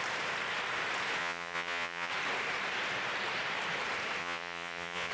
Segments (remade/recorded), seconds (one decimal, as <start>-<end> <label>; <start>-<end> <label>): 0.0-1.2 recorded; 1.2-2.1 remade; 2.1-4.2 recorded; 4.2-5.1 remade